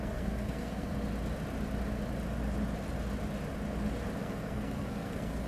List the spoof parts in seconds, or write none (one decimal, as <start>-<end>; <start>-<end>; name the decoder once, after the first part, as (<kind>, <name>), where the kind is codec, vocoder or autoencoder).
0.0-0.9 (codec, SNAC); 4.2-5.5